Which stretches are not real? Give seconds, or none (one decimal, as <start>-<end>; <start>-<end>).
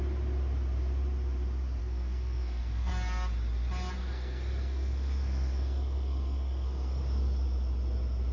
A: 1.8-2.9; 4.0-7.0